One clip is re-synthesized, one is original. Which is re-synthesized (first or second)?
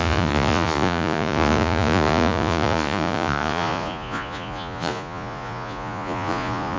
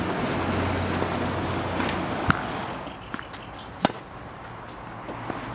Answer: first